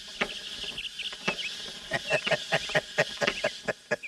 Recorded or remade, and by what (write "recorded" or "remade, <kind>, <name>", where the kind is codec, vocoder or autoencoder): recorded